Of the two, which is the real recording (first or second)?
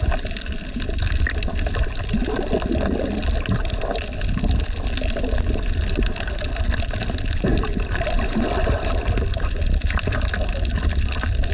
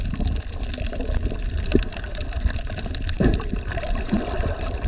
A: first